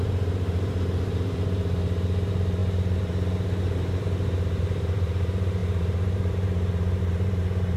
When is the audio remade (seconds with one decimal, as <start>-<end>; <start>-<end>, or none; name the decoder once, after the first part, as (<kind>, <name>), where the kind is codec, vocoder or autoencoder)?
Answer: 0.0-7.8 (vocoder, BigVGAN v2)